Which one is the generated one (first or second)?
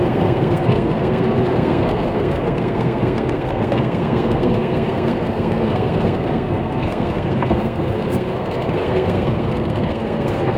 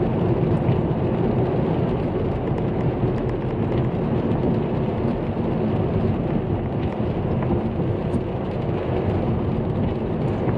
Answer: first